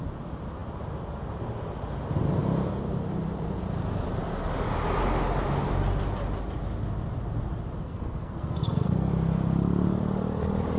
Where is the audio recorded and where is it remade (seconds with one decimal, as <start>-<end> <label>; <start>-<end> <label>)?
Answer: 0.0-7.8 recorded; 7.8-9.1 remade; 9.1-10.8 recorded